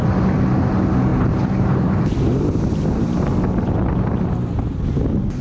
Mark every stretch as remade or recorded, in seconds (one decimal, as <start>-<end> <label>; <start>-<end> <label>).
0.0-5.4 recorded